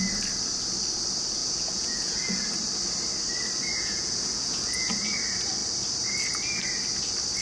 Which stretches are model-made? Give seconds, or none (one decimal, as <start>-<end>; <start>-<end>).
1.4-2.5; 3.7-4.9